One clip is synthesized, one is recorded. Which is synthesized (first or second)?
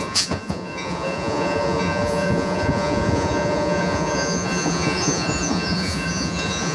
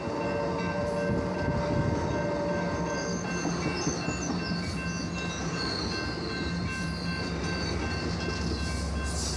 first